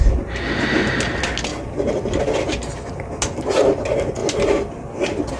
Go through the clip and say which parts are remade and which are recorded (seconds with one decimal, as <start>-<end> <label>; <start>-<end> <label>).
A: 0.0-5.4 recorded